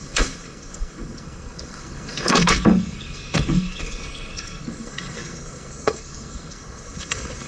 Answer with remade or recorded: remade